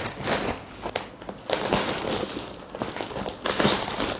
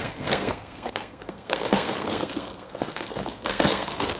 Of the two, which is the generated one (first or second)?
second